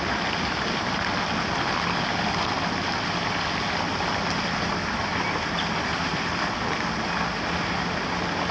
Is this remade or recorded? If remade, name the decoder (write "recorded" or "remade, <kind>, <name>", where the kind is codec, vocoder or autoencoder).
recorded